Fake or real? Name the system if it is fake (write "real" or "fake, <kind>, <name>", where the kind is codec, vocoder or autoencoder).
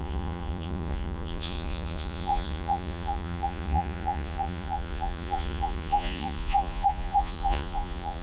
fake, vocoder, Vocos